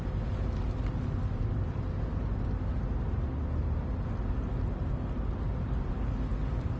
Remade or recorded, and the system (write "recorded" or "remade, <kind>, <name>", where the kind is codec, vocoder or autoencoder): recorded